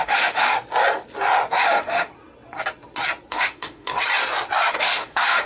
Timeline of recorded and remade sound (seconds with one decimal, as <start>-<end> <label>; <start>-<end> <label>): 0.0-0.5 remade; 0.5-1.5 recorded; 1.5-2.1 remade; 2.1-3.3 recorded; 3.3-3.9 remade; 3.9-4.7 recorded; 4.7-5.5 remade